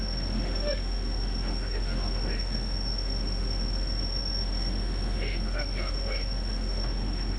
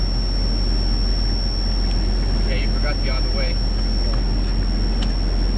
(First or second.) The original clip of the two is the second